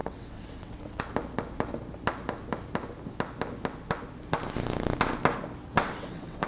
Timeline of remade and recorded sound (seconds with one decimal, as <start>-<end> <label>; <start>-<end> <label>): 0.0-1.0 remade; 1.0-5.7 recorded; 5.7-6.5 remade